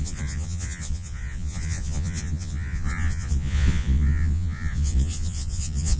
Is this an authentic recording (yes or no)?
no